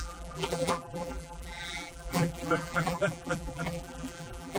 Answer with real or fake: fake